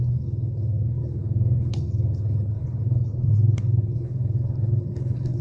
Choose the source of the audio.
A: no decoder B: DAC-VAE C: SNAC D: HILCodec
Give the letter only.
D